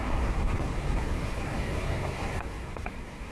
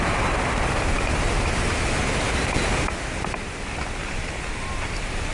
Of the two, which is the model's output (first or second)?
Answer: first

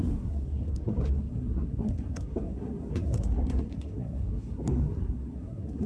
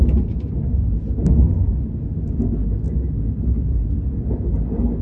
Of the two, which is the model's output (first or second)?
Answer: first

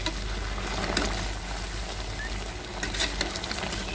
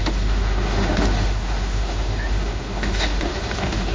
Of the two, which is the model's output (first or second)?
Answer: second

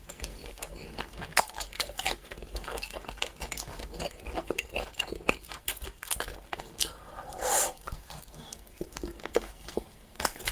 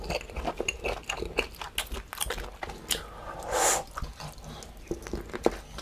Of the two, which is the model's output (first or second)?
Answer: first